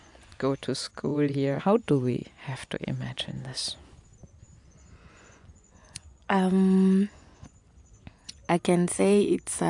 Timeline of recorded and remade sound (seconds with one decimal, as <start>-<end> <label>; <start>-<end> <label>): 0.0-2.2 remade; 2.2-4.7 recorded; 4.7-8.4 remade; 8.4-9.0 recorded; 9.0-9.7 remade